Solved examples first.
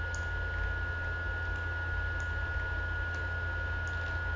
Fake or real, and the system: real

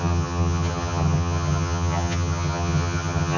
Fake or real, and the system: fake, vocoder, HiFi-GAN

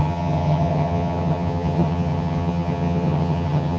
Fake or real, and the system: fake, vocoder, HiFi-GAN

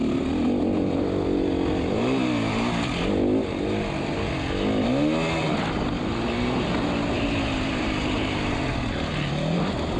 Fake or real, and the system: real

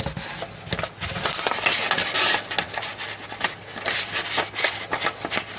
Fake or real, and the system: real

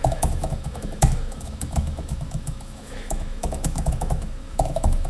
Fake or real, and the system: fake, autoencoder, DAC-VAE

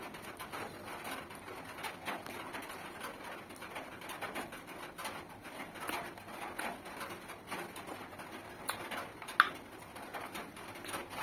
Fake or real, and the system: real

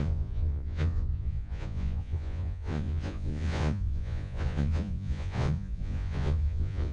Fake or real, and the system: fake, vocoder, Vocos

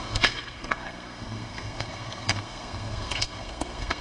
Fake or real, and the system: fake, codec, SNAC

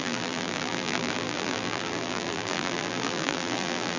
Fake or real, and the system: fake, vocoder, BigVGAN v2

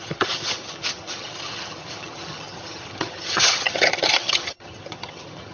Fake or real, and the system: fake, vocoder, HiFi-GAN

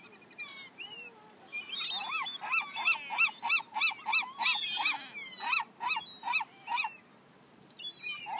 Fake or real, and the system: real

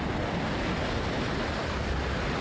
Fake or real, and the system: real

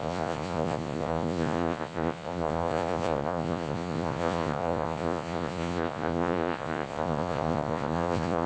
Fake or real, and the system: fake, vocoder, Vocos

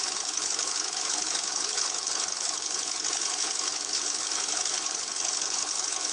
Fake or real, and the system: fake, codec, HILCodec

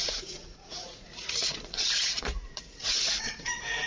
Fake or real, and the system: fake, vocoder, Vocos